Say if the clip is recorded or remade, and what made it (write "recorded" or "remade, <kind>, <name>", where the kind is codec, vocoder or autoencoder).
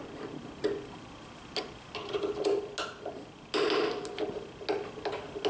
recorded